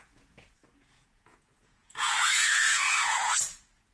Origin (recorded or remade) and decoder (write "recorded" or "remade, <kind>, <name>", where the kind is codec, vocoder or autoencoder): remade, vocoder, Vocos